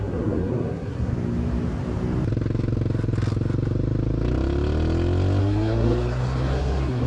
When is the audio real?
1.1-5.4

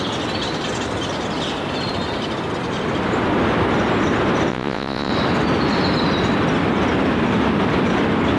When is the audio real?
0.0-4.5; 5.1-8.4

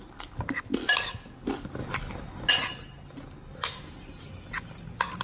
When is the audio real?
0.0-5.2

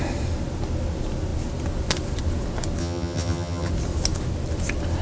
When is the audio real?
0.0-2.8; 3.7-5.0

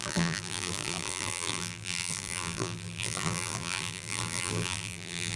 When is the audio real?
none

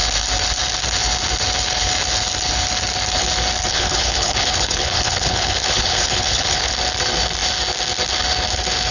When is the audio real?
0.0-3.7; 6.7-8.9

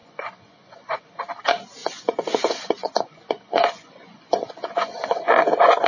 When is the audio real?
1.1-1.8; 5.3-5.9